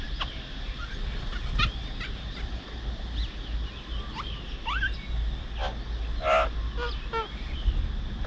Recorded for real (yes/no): yes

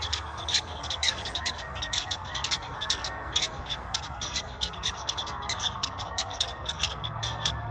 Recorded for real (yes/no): no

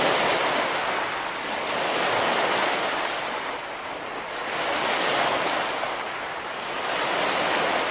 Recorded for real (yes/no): yes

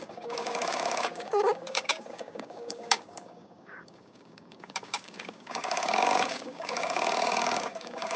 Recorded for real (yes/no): no